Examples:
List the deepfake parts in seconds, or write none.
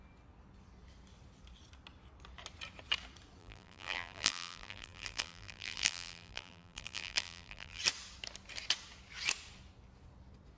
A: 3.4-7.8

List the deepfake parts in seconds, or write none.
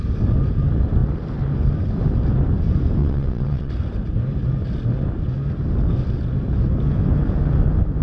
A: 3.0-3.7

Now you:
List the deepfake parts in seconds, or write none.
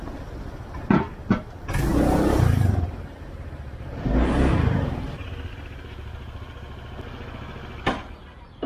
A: 1.9-5.3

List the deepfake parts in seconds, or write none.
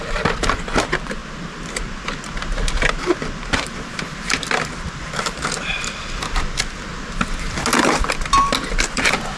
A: none